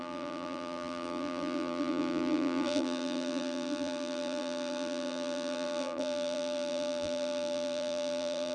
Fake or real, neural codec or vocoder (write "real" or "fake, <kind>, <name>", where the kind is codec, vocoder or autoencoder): fake, vocoder, BigVGAN v2